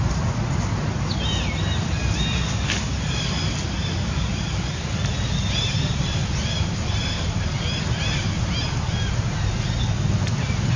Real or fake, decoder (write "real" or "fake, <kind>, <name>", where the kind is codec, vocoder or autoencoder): real